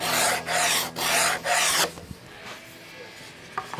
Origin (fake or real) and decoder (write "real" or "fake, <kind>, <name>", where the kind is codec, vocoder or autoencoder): real